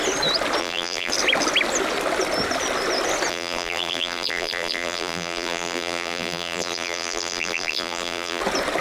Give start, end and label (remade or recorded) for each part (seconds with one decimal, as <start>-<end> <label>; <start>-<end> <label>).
0.0-0.6 recorded; 0.6-1.1 remade; 1.1-3.3 recorded; 3.3-8.4 remade; 8.4-8.8 recorded